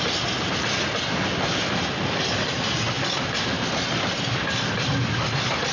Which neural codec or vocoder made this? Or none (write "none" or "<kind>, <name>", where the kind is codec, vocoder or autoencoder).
none